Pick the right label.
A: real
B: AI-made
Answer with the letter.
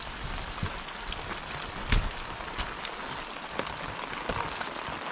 A